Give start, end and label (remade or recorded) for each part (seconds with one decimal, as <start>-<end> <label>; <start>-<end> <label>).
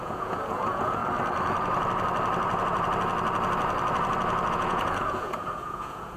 0.0-1.0 remade; 1.0-4.5 recorded; 4.5-6.2 remade